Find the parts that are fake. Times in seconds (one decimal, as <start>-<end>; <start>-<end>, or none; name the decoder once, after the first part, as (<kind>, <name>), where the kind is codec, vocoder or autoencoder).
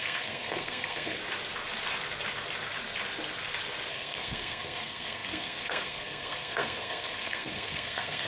0.0-1.2 (codec, SNAC); 3.9-8.3